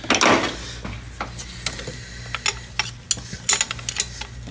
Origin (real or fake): real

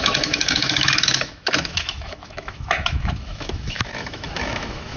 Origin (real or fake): fake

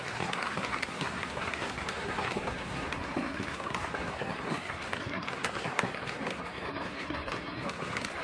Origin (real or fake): fake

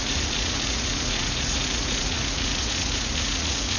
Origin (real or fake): fake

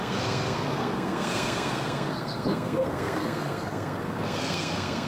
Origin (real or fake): fake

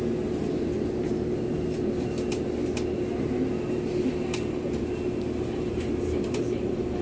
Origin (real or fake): real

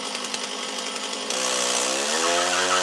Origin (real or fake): real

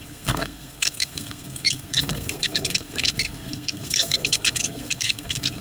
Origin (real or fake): fake